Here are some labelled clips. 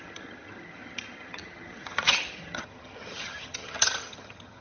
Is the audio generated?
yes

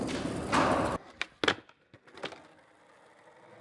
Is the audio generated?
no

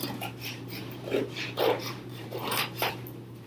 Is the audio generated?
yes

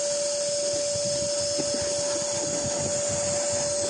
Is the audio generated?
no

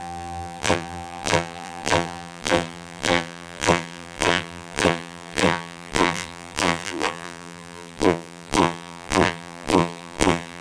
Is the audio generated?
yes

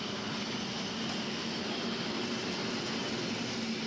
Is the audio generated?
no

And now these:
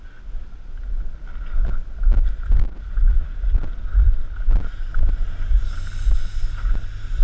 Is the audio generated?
no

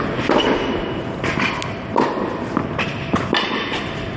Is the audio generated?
no